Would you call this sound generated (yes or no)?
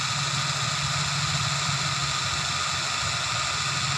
no